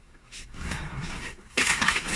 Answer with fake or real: fake